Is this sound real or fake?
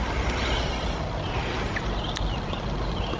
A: real